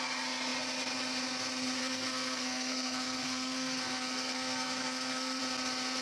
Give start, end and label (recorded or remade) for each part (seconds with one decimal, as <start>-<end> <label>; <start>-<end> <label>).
0.0-1.8 recorded; 1.8-5.4 remade; 5.4-6.0 recorded